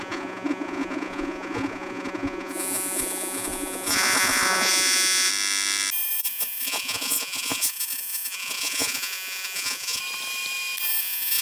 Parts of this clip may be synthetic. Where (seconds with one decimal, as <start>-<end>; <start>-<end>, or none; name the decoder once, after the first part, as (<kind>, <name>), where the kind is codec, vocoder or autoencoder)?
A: 0.0-5.3 (vocoder, Vocos); 6.2-10.0; 11.0-11.4